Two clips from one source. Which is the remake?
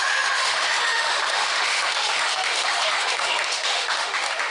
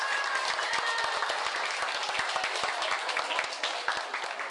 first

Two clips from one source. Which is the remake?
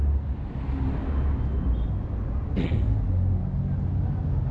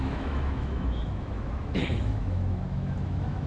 second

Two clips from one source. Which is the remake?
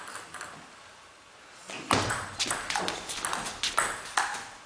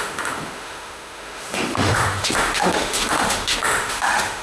second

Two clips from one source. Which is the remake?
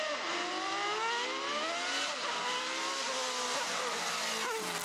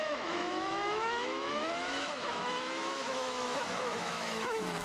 second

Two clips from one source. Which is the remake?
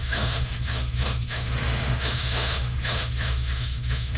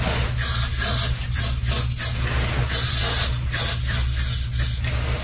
first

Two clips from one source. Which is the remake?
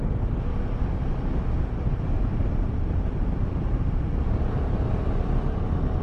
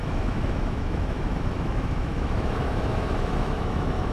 second